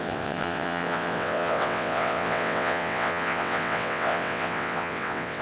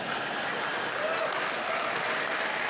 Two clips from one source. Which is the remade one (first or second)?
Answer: first